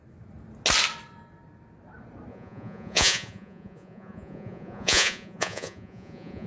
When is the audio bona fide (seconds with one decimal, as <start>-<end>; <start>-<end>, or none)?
0.0-2.3